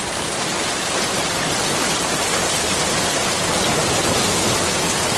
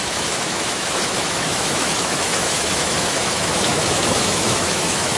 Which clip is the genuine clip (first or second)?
first